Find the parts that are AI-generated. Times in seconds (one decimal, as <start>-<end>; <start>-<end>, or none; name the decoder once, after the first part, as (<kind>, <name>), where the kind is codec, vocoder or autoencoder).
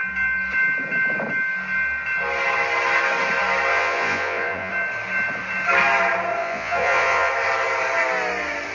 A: 3.7-4.7 (vocoder, Vocos); 6.4-7.3